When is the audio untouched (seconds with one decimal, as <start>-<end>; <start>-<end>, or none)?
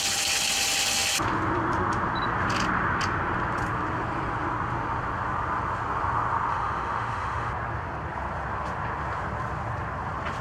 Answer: 0.0-6.5; 7.5-10.4